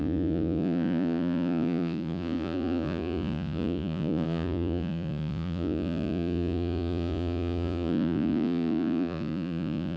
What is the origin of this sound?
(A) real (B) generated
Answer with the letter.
B